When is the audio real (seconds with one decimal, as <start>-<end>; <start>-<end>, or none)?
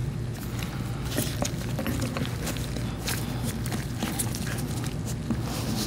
0.0-5.9